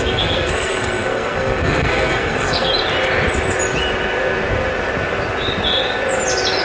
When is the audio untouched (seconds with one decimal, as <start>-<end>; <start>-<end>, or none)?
2.7-6.6